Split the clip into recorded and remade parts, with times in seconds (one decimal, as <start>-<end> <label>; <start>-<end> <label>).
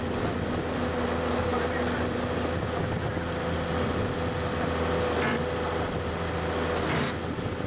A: 0.0-7.7 recorded